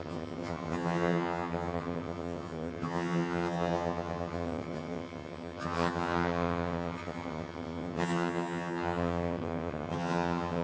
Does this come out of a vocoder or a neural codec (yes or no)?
yes